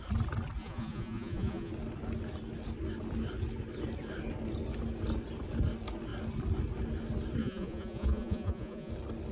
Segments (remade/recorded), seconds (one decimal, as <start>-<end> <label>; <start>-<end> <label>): 0.0-0.6 recorded; 0.6-1.7 remade; 1.7-7.4 recorded; 7.4-8.9 remade; 8.9-9.3 recorded